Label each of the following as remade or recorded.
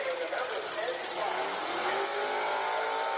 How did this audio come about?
recorded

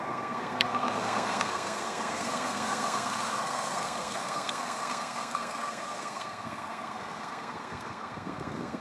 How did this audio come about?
remade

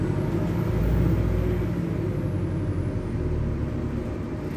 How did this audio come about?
recorded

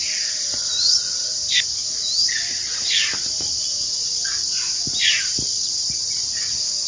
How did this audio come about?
recorded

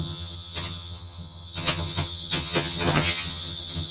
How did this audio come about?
remade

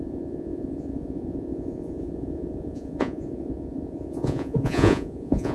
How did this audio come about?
remade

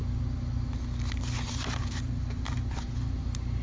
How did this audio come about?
recorded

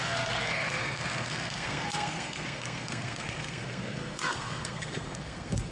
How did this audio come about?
remade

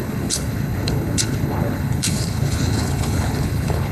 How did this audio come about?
remade